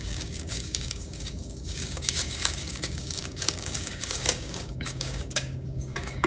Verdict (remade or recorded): remade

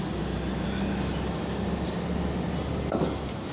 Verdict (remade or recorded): recorded